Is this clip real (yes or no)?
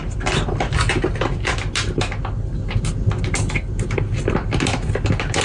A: yes